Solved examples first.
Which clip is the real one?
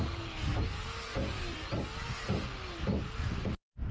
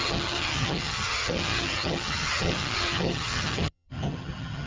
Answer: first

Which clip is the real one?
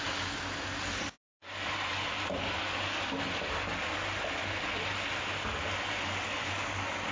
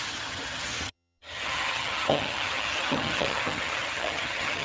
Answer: first